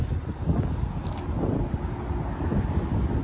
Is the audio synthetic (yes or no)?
no